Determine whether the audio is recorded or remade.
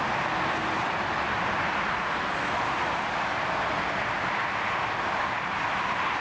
recorded